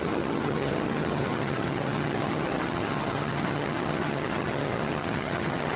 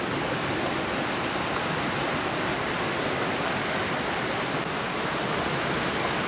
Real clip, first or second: second